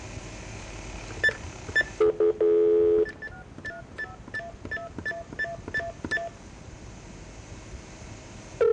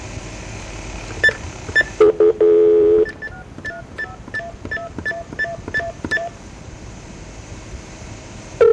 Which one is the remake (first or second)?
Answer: second